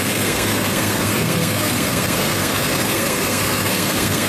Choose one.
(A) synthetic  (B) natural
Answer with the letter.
A